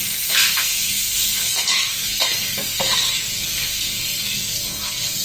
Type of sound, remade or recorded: remade